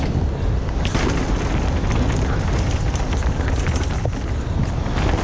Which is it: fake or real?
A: real